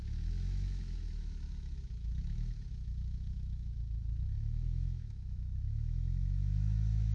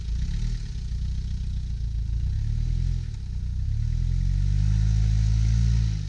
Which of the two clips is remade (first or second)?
first